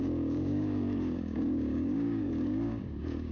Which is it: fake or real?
fake